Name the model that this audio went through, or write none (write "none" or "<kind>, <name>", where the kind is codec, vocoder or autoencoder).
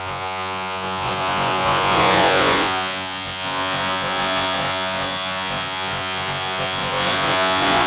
vocoder, Vocos